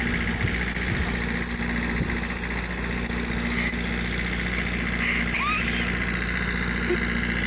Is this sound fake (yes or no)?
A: no